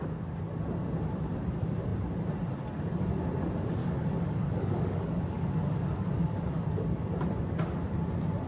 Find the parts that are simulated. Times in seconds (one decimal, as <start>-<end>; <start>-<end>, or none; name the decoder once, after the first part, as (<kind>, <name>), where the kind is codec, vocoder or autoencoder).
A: 3.8-7.1 (codec, DAC)